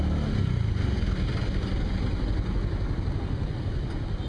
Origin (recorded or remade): recorded